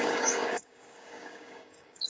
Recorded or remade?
remade